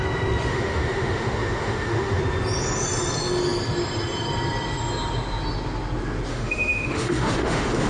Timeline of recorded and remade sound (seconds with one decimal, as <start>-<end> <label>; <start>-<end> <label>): 0.0-0.5 recorded; 0.5-2.2 remade; 2.2-6.3 recorded; 6.3-7.9 remade